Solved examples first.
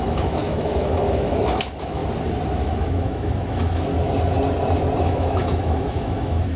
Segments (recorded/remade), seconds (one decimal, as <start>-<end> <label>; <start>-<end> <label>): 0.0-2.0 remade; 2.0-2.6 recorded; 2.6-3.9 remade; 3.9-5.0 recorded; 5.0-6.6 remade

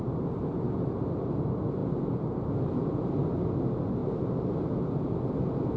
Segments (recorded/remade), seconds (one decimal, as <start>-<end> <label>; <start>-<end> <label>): 0.0-5.8 recorded

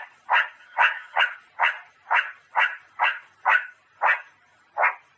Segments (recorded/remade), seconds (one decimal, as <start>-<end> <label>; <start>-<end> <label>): 0.0-0.6 recorded; 0.6-1.2 remade; 1.2-5.2 recorded